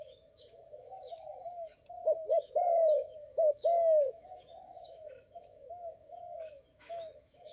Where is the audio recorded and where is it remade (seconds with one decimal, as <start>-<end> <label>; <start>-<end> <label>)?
0.0-1.7 remade; 1.7-2.3 recorded; 2.3-7.5 remade